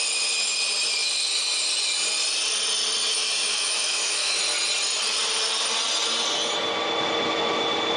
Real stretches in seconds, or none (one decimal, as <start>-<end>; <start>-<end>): 0.0-3.1; 4.4-8.0